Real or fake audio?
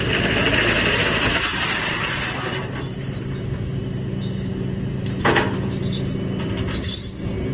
real